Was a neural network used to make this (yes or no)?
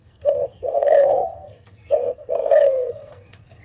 yes